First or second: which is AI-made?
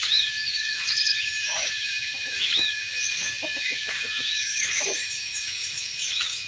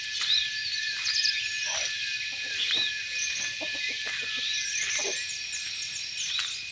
first